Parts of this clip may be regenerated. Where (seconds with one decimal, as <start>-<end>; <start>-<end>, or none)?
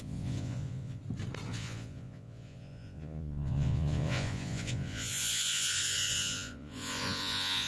0.0-1.0; 1.5-7.7